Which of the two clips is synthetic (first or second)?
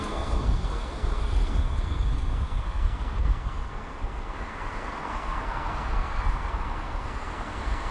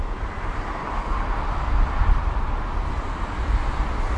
first